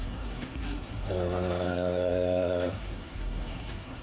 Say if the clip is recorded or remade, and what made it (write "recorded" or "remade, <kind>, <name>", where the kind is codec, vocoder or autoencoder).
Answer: remade, codec, SNAC